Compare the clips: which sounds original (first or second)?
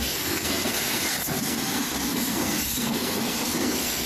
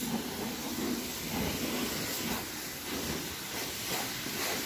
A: second